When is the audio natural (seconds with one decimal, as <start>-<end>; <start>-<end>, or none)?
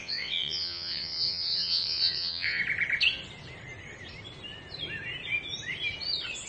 2.6-6.5